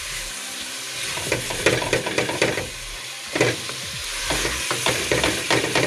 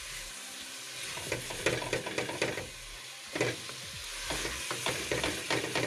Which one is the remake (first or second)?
first